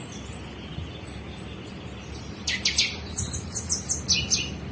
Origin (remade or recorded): recorded